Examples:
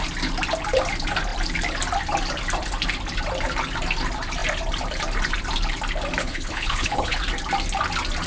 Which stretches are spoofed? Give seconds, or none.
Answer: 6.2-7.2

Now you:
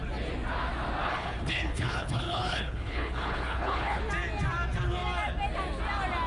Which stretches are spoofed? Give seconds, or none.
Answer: 1.0-4.0

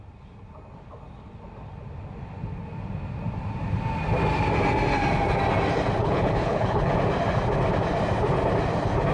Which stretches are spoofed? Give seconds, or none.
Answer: 6.0-6.9

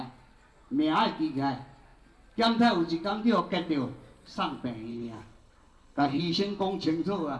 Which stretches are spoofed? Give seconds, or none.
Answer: 4.9-6.2